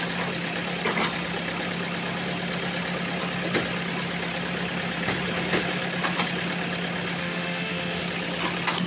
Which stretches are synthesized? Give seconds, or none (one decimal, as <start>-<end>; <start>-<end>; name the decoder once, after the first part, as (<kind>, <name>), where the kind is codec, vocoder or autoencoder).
7.2-8.0 (autoencoder, DAC-VAE)